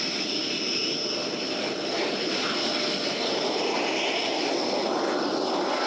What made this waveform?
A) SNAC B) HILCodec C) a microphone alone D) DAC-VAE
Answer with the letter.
C